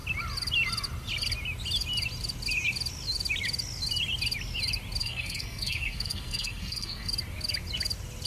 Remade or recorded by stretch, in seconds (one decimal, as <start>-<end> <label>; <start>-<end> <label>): 0.0-5.0 recorded; 5.0-7.1 remade; 7.1-8.3 recorded